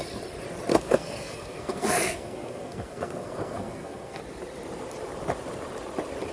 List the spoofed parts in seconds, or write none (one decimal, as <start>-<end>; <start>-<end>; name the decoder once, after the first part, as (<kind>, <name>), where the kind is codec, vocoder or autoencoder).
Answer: 0.7-4.2 (codec, SNAC)